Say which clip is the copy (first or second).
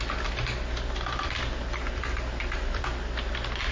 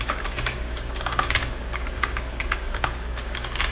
second